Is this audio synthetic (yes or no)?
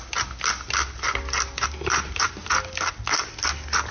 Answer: no